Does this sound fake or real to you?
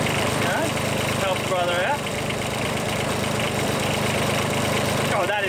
fake